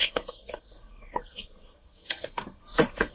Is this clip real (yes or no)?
no